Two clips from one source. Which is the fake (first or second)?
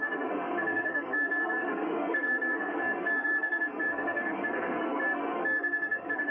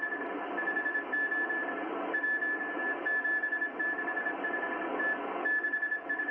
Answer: first